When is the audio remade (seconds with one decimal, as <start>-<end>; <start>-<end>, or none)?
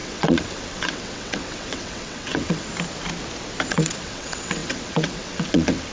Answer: 0.0-2.7; 3.7-5.9